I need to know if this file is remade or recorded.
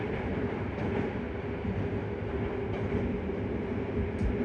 recorded